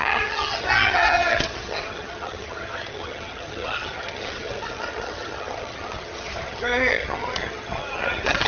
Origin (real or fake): fake